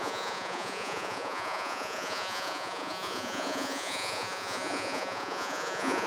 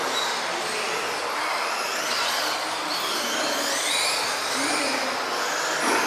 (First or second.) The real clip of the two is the second